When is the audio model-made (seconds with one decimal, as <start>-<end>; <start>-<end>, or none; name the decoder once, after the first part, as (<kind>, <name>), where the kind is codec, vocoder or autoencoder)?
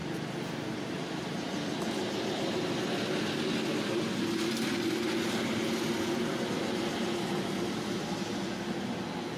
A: none